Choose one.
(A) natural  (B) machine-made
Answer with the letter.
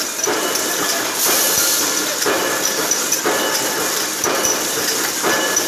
B